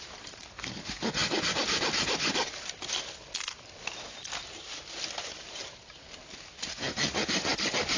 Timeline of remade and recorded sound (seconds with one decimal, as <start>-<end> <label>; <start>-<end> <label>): 0.0-8.0 recorded

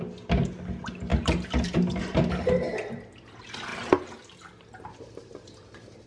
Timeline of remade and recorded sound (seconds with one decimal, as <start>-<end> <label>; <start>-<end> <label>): 0.0-1.1 recorded; 1.1-2.3 remade; 2.3-6.1 recorded

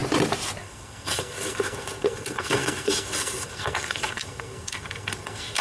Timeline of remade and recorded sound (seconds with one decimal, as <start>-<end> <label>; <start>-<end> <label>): 0.0-0.6 recorded; 0.6-5.6 remade

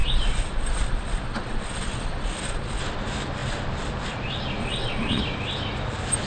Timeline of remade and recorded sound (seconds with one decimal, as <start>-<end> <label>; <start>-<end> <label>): 0.0-2.8 remade; 2.8-4.6 recorded; 4.6-5.2 remade; 5.2-6.3 recorded

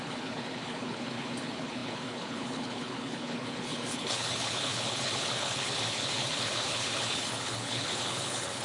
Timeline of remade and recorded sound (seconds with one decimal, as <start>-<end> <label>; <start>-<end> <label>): 0.0-8.6 remade